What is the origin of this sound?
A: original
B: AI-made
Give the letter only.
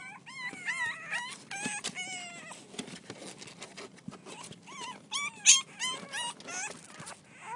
A